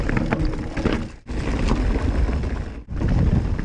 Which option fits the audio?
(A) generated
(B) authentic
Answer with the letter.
B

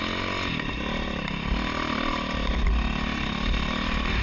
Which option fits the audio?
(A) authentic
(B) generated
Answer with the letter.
A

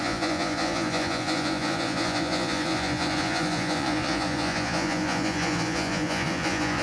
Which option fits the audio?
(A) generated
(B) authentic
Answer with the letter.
A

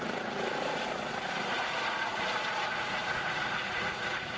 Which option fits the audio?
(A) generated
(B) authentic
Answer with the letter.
A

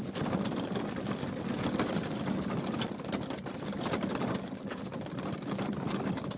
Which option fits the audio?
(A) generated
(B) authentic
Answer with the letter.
B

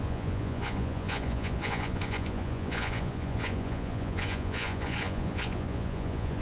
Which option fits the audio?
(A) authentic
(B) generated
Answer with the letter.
B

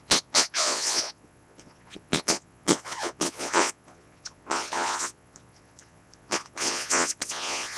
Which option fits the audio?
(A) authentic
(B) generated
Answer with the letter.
B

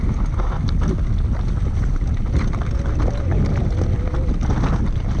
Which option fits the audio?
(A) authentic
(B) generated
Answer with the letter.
A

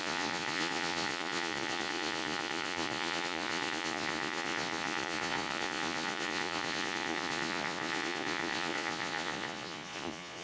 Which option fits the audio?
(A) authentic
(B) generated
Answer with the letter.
B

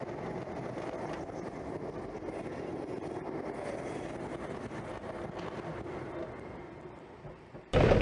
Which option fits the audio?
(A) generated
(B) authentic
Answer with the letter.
B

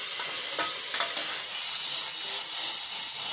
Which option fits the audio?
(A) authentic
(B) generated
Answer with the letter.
A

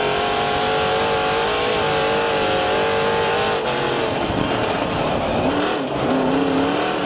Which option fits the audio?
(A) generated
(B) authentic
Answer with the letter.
B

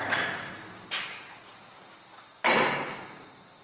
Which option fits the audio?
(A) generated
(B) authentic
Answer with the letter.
B